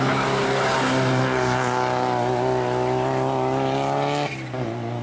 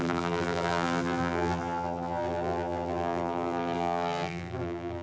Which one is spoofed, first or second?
second